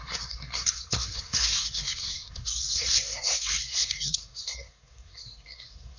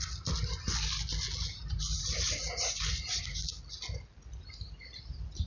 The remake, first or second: first